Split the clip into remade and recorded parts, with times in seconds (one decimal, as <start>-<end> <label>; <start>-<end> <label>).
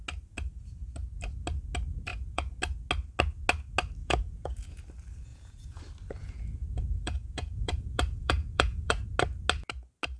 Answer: 0.0-2.1 recorded; 2.1-2.6 remade; 2.6-4.0 recorded; 4.0-4.8 remade; 4.8-5.3 recorded; 5.3-5.8 remade; 5.8-6.2 recorded; 6.2-9.0 remade; 9.0-10.2 recorded